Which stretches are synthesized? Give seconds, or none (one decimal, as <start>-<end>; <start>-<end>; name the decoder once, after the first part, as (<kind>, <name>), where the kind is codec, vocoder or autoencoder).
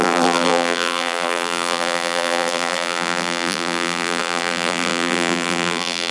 0.0-6.1 (vocoder, BigVGAN v2)